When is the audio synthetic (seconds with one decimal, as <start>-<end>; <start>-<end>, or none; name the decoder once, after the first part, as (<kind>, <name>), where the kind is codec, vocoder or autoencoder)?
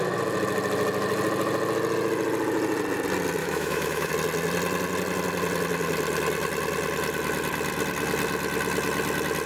3.4-4.1 (autoencoder, DAC-VAE)